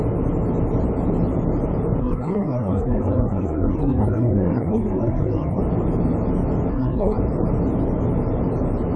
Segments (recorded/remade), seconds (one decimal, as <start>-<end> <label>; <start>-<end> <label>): 0.0-2.0 recorded; 2.0-5.6 remade; 5.6-6.7 recorded; 6.7-7.2 remade; 7.2-9.0 recorded